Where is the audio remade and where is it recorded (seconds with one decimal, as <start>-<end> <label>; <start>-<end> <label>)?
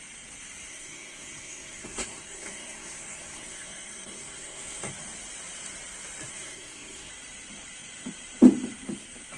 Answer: 0.0-0.7 recorded; 0.7-4.9 remade; 4.9-6.3 recorded; 6.3-7.1 remade; 7.1-9.4 recorded